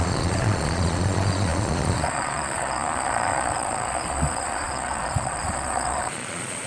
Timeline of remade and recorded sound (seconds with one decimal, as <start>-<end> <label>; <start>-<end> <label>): 0.0-6.7 remade